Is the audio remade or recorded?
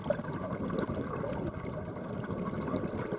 recorded